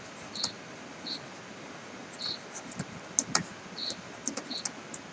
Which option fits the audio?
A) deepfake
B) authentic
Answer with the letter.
B